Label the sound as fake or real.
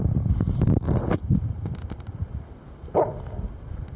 real